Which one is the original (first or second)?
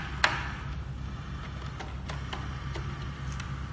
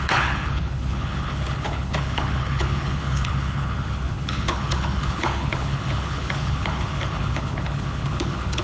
first